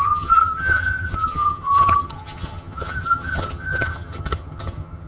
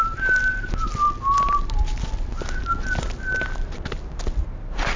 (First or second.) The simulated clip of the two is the first